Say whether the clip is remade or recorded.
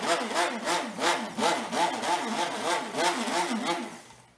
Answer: recorded